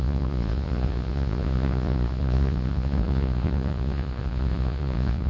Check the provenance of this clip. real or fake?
fake